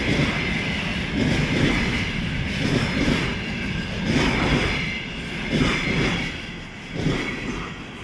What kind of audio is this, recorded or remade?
recorded